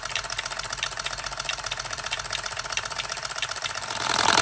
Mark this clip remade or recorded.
remade